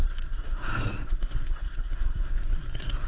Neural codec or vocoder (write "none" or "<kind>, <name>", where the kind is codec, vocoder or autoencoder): codec, SNAC